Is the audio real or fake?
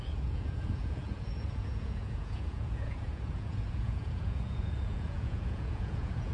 fake